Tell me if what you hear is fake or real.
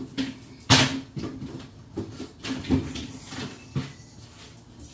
real